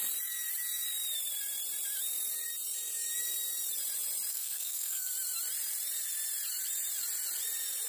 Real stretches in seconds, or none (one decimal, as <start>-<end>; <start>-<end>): 0.0-4.3; 5.1-7.9